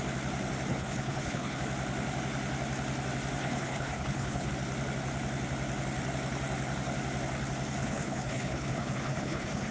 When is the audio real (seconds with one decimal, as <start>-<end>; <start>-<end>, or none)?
0.0-0.7; 1.6-3.4; 4.5-7.8